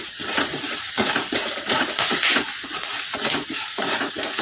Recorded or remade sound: remade